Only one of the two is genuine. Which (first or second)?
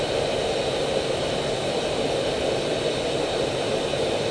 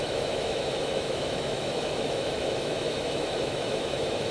first